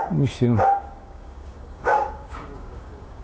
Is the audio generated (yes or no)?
yes